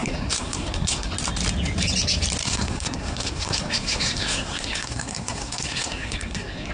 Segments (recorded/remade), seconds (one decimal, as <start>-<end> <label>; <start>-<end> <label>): 0.0-1.1 remade; 1.1-2.4 recorded; 2.4-6.7 remade